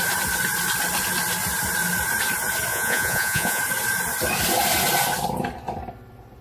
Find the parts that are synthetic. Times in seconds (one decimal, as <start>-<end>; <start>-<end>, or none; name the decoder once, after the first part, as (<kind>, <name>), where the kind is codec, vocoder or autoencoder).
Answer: 2.7-3.6 (vocoder, Vocos)

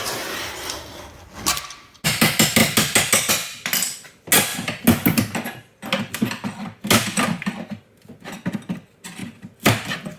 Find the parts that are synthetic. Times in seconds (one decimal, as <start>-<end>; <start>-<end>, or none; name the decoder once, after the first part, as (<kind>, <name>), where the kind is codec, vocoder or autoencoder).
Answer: none